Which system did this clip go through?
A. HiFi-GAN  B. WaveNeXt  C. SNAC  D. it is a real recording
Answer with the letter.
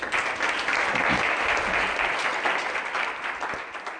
D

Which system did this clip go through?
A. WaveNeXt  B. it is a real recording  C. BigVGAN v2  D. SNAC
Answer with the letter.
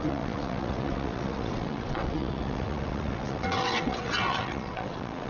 A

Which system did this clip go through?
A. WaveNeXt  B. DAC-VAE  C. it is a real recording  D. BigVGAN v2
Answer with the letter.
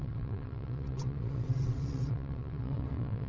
A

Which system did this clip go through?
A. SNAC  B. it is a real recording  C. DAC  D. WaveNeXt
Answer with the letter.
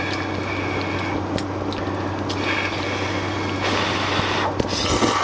B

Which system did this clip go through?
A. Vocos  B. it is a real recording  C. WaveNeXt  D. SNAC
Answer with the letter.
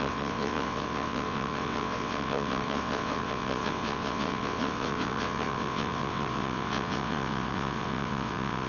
C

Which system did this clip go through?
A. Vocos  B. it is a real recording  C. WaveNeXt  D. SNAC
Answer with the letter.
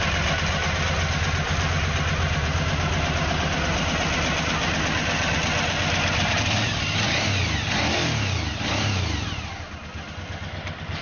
B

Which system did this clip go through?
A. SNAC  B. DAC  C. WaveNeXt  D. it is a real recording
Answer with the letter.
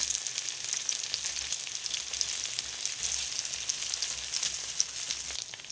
D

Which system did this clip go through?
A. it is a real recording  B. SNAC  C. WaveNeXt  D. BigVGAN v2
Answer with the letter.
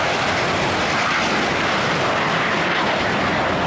A